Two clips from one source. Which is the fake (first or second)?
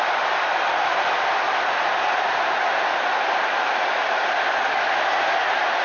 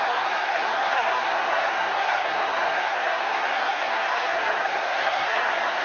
second